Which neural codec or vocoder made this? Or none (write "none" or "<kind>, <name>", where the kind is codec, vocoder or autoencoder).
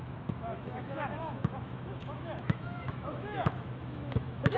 autoencoder, DAC-VAE